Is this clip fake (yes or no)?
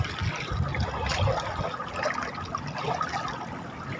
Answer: no